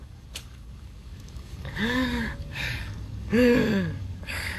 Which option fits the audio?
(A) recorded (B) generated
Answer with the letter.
B